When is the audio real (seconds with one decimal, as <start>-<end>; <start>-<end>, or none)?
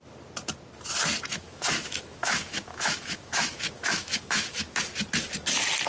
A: 0.0-1.3; 4.8-5.9